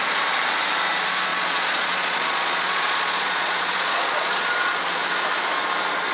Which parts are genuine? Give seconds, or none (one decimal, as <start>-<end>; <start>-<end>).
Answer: 0.0-1.3; 5.0-6.1